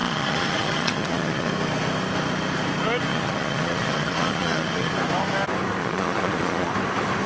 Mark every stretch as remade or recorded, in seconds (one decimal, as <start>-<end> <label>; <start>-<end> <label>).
0.0-1.5 remade; 1.5-3.1 recorded; 3.1-4.9 remade; 4.9-5.8 recorded; 5.8-6.7 remade; 6.7-7.3 recorded